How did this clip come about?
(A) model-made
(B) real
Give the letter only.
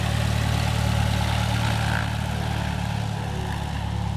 B